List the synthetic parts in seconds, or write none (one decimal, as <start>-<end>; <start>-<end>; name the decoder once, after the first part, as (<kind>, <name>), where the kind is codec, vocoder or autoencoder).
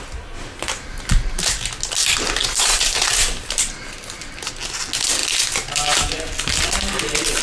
2.4-3.1 (vocoder, BigVGAN v2)